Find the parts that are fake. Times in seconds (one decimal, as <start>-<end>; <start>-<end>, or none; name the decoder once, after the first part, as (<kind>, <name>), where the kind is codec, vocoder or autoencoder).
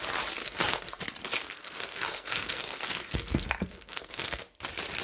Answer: 0.4-1.0 (codec, SNAC); 1.4-4.4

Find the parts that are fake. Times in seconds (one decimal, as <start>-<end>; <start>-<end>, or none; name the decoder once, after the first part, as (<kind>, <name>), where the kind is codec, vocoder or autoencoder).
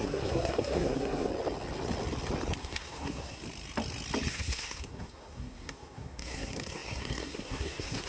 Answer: 0.0-1.3 (codec, SNAC); 2.6-3.4; 4.3-8.1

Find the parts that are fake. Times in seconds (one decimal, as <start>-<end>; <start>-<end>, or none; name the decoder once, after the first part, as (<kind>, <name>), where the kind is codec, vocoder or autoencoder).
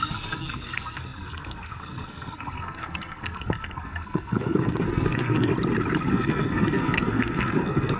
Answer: 0.0-5.5 (codec, SNAC); 6.1-8.0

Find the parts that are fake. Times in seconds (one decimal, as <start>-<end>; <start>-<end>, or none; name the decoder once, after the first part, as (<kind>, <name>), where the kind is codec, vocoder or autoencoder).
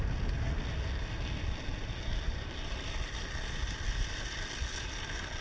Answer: none